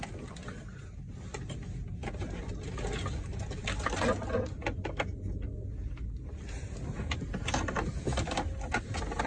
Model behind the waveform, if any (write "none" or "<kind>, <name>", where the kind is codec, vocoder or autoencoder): none